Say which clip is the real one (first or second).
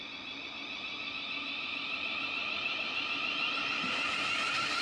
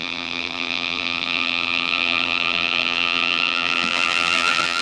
first